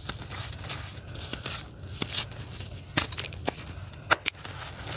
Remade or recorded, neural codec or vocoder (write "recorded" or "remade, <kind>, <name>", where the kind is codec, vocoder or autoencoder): recorded